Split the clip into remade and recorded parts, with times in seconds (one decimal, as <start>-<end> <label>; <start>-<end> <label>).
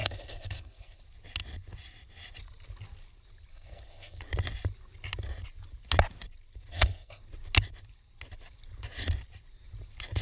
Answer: 0.0-1.0 remade; 1.0-3.5 recorded; 3.5-4.2 remade; 4.2-6.7 recorded; 6.7-7.2 remade; 7.2-10.2 recorded